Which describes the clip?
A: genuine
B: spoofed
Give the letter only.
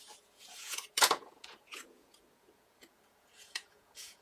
B